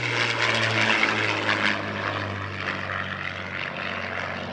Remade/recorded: recorded